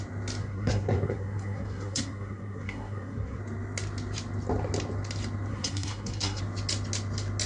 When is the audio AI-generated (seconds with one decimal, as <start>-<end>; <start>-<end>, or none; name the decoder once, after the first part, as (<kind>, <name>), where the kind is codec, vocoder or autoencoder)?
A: 0.4-3.4 (codec, SNAC); 5.5-6.4